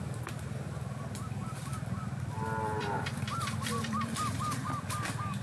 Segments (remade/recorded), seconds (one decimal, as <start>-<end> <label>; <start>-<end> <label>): 0.0-1.4 recorded; 1.4-4.4 remade; 4.4-5.4 recorded